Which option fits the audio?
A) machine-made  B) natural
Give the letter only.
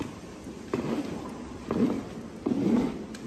B